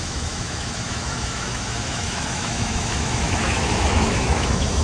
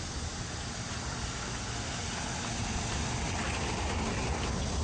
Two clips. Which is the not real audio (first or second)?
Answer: first